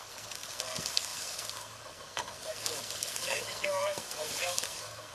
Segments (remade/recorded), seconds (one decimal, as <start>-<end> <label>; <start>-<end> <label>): 0.0-5.1 remade